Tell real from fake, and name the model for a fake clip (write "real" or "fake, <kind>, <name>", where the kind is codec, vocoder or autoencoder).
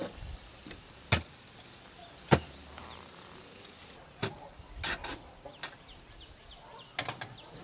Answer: real